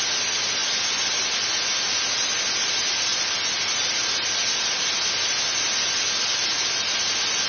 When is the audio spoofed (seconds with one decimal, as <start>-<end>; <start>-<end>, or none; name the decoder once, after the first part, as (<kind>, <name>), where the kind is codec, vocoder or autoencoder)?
none